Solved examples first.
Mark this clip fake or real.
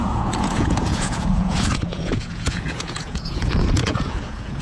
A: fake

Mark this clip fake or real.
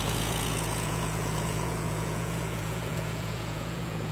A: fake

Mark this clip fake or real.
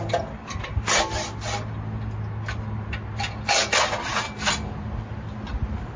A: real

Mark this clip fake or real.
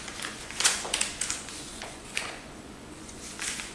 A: fake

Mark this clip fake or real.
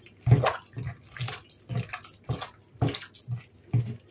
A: real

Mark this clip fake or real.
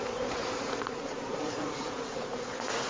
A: fake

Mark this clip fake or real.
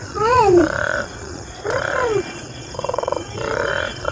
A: fake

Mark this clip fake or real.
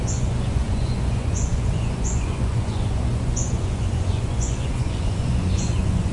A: fake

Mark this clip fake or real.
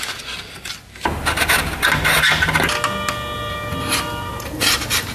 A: real